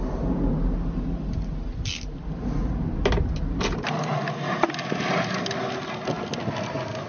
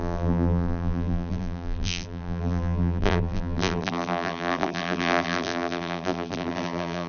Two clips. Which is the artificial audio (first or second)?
second